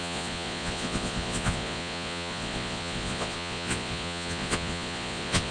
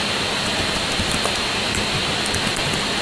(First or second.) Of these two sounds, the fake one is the first